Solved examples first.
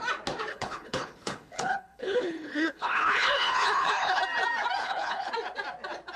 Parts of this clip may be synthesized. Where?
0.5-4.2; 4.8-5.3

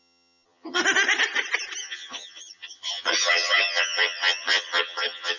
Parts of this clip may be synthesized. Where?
0.0-0.8; 1.8-5.4